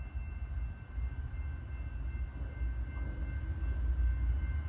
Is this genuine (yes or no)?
yes